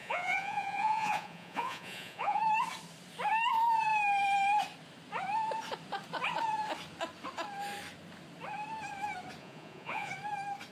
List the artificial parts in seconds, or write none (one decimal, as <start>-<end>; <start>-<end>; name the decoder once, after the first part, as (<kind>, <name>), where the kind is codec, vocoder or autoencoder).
0.0-2.4 (vocoder, Vocos); 9.4-10.1